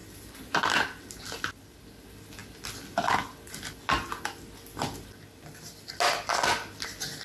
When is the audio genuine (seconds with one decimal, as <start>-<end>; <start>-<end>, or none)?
0.0-7.2